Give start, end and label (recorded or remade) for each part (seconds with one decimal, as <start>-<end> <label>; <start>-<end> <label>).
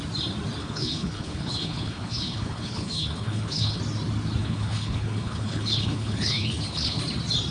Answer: 0.0-0.6 recorded; 0.6-3.8 remade; 3.8-4.4 recorded; 4.4-7.0 remade; 7.0-7.5 recorded